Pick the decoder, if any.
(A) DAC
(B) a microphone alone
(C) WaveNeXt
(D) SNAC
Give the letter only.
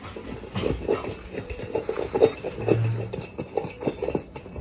B